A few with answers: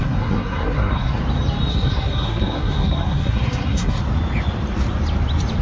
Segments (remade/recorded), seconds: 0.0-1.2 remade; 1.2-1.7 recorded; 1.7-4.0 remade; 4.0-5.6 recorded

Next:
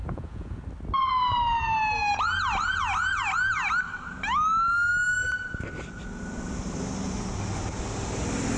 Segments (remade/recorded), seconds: 0.0-0.6 remade; 0.6-8.6 recorded

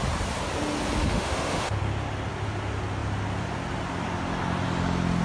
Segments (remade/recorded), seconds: 0.0-1.0 recorded; 1.0-1.8 remade; 1.8-5.2 recorded